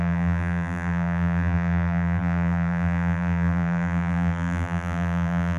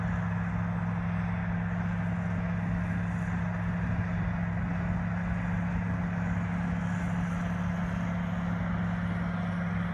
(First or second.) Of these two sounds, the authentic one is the second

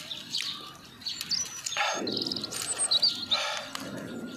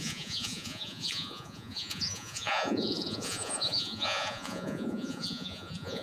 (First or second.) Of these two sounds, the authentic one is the first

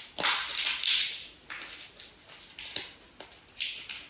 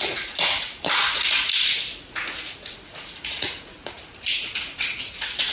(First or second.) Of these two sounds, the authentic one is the first